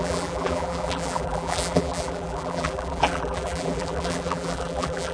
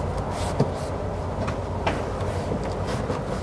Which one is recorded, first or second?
second